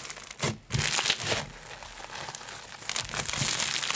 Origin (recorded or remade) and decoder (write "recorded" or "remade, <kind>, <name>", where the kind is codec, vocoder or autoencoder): recorded